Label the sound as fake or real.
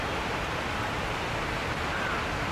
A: real